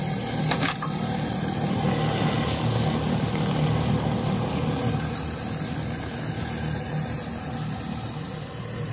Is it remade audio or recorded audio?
recorded